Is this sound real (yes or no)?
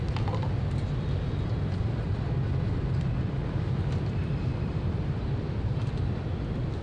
yes